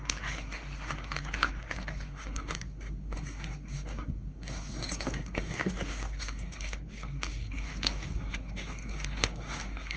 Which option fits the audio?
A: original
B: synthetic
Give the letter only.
B